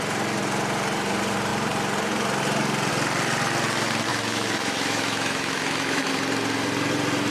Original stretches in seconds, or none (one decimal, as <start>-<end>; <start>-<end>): 0.0-4.1; 6.1-7.3